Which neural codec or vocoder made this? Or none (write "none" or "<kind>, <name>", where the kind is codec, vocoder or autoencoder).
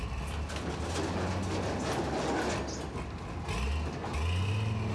none